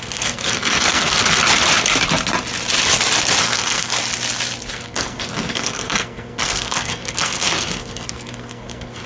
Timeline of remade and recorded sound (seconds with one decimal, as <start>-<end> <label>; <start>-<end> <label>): 0.0-1.4 remade; 1.4-3.4 recorded; 3.4-3.9 remade; 3.9-4.7 recorded; 4.7-9.1 remade